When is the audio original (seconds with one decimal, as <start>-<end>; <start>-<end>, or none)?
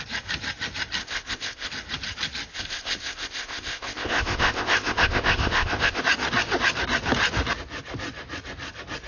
0.0-1.0; 1.7-2.5; 6.0-9.1